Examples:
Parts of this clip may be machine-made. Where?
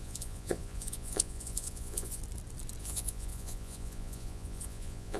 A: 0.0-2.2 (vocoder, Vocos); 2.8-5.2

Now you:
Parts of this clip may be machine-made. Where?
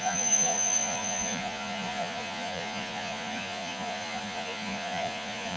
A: 0.0-5.6 (vocoder, Vocos)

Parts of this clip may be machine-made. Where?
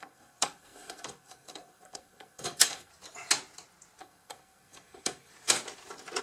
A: 0.0-2.9 (codec, SNAC); 4.0-5.3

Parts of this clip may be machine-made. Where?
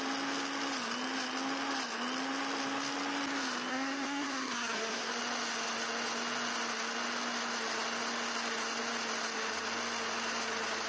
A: 3.7-5.1 (codec, SNAC)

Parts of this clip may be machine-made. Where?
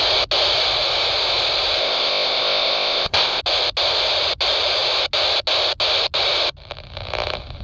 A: 1.8-3.4 (codec, ZipCodec)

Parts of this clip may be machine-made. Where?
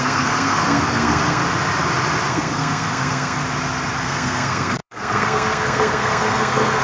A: 0.0-1.4 (codec, SNAC); 2.3-3.4; 4.0-6.8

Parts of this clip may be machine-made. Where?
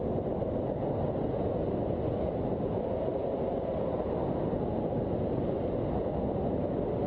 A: none